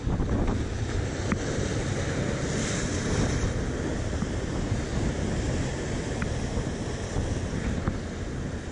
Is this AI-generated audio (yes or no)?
no